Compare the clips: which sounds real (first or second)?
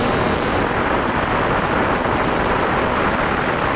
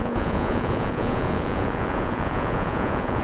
first